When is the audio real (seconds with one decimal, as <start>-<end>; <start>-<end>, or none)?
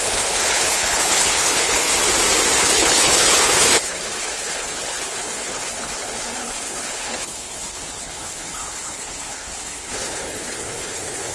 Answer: 1.9-2.6